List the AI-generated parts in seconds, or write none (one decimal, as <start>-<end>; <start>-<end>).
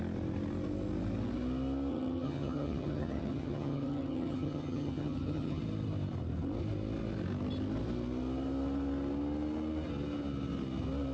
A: 1.9-5.6